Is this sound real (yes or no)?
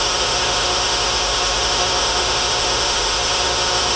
no